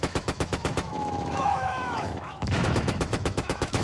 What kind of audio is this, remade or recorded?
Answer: remade